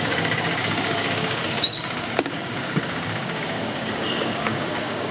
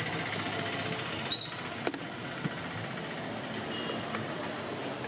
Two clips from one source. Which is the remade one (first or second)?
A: first